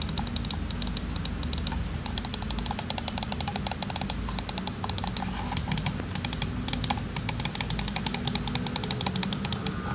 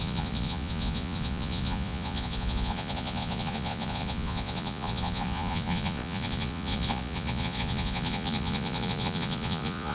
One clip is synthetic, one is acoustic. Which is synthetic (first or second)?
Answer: second